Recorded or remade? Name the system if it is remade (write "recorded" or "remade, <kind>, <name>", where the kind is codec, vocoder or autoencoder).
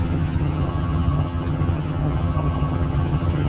remade, vocoder, HiFi-GAN